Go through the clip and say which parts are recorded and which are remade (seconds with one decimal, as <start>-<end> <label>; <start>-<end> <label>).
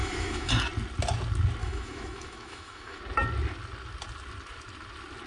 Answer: 0.0-0.5 remade; 0.5-1.6 recorded; 1.6-3.0 remade; 3.0-5.3 recorded